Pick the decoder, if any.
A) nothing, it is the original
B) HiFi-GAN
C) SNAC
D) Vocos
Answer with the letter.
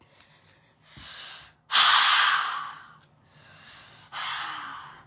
A